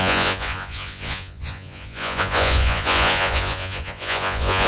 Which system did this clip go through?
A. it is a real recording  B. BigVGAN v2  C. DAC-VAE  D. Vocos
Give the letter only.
D